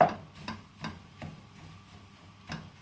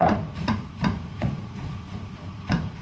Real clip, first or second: first